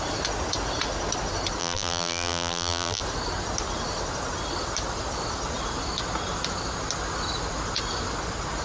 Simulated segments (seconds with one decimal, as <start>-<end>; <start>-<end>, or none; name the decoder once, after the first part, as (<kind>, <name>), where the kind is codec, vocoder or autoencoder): 1.6-3.0 (vocoder, BigVGAN v2)